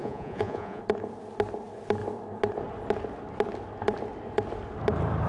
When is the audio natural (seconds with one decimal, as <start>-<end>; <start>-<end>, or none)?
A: 0.8-5.3